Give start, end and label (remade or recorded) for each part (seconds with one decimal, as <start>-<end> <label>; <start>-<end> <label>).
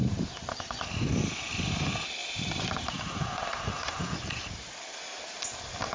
0.0-0.6 remade; 0.6-2.2 recorded; 2.2-4.0 remade; 4.0-5.9 recorded